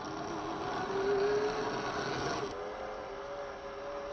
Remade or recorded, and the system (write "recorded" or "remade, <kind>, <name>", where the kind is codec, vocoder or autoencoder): recorded